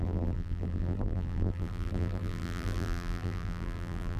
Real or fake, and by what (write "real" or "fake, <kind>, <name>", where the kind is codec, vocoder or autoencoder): fake, vocoder, BigVGAN v2